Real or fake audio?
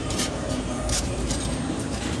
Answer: fake